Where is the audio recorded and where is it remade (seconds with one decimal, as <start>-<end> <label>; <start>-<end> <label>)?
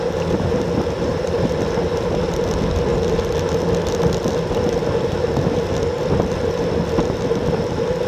0.0-1.1 recorded; 1.1-2.2 remade; 2.2-8.1 recorded